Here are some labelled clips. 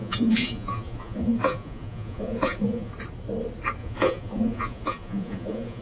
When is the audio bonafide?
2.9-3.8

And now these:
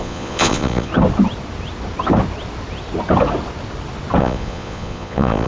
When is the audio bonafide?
0.9-4.2

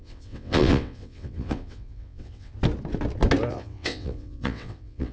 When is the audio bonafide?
2.5-3.5

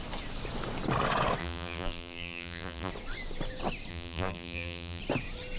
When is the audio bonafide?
0.0-1.4; 2.9-3.9; 5.0-5.6

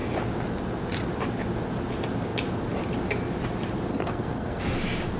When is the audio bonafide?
0.0-3.9; 4.6-5.2

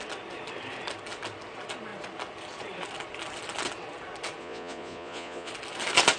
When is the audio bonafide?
0.0-4.4; 5.5-6.2